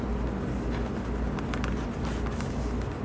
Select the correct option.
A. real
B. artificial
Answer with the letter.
A